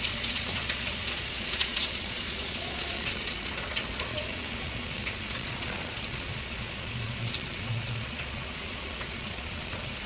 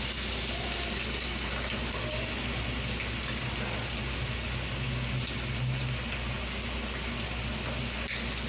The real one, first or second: second